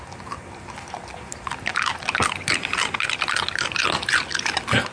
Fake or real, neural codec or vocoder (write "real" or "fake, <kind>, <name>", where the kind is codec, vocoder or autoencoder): real